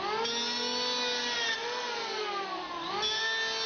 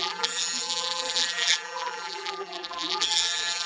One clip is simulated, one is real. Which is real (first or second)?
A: first